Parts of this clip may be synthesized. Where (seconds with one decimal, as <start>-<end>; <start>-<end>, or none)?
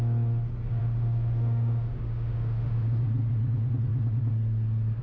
0.8-3.0